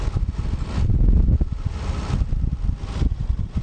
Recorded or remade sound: recorded